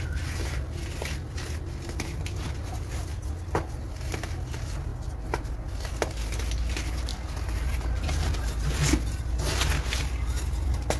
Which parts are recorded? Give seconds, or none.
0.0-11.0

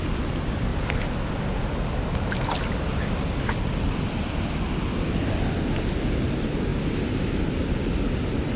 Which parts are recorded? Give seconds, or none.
0.0-8.6

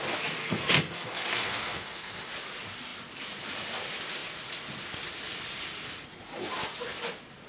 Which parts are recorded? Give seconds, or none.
0.0-0.4; 2.2-7.5

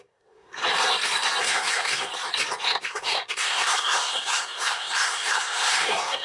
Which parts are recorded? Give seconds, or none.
0.6-1.4; 2.1-2.8

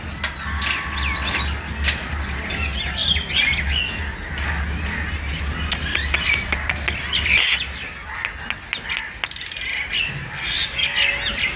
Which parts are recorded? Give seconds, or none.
0.0-11.6